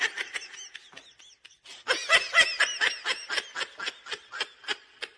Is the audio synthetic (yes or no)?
no